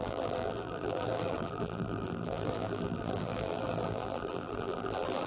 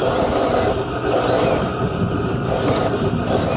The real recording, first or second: second